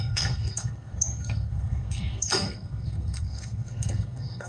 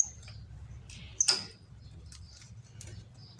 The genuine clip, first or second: second